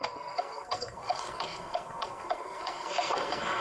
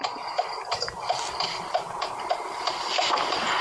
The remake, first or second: first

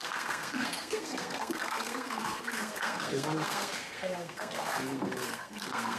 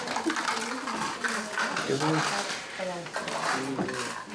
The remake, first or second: first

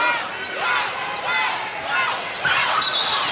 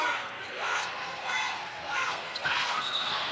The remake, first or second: second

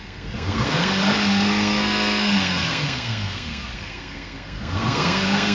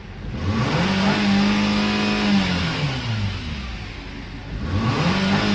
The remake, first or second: first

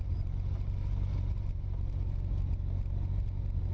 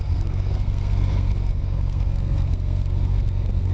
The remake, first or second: second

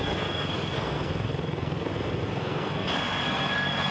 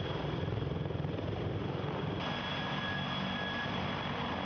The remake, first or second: first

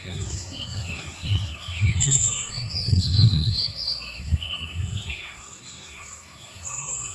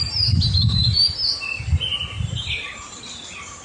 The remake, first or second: first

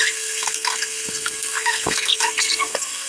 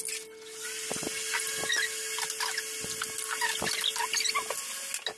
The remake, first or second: first